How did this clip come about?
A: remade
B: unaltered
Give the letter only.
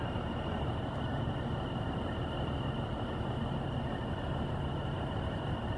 B